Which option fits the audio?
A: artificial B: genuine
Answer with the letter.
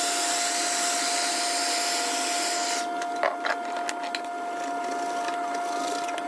B